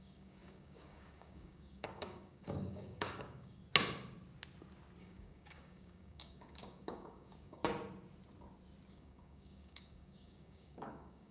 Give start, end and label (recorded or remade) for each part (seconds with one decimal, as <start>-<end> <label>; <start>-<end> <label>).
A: 0.0-3.6 remade; 3.6-5.0 recorded; 5.0-7.6 remade; 7.6-8.9 recorded; 8.9-11.3 remade